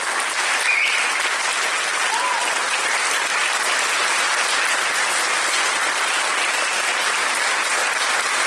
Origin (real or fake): real